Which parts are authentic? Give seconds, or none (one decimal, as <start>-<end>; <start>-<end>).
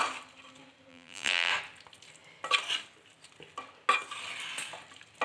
0.0-0.9; 1.5-5.2